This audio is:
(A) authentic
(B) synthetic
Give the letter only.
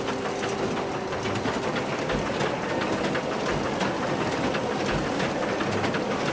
A